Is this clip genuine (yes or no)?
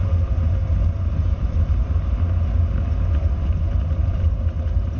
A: yes